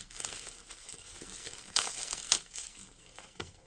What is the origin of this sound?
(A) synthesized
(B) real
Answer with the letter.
A